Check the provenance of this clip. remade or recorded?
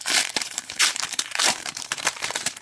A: remade